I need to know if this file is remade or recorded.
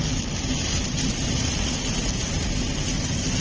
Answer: recorded